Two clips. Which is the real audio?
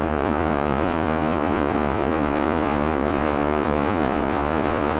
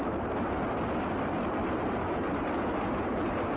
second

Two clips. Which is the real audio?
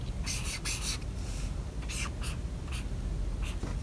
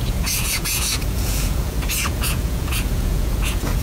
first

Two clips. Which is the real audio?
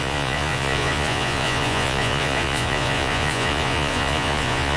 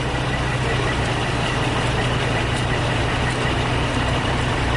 second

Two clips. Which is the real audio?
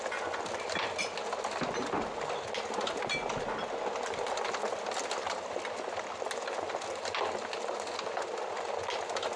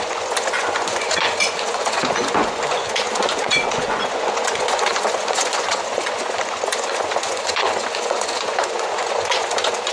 first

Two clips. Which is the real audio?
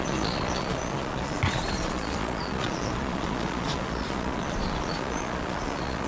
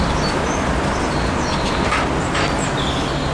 second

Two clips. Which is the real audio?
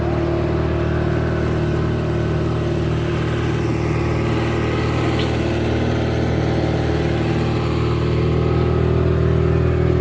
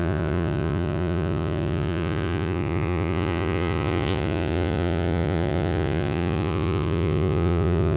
first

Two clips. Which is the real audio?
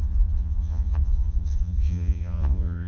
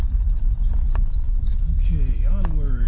second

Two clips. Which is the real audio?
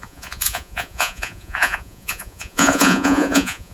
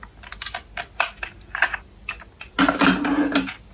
second